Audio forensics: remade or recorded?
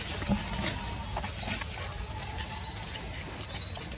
recorded